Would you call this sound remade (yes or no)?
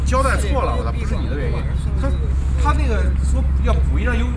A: no